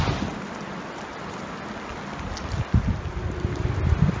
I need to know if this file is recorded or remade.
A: recorded